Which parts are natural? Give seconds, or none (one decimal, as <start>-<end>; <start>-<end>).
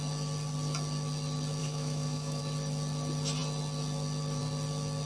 0.0-1.6; 2.4-5.1